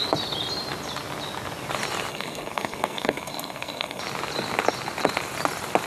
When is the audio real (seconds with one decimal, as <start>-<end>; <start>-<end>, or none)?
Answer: 0.0-2.1; 4.0-5.9